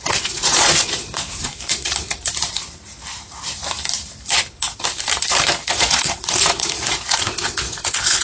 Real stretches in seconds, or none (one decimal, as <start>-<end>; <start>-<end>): 1.5-5.7